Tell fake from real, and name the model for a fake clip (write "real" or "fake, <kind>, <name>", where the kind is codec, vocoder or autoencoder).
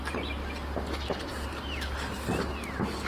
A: real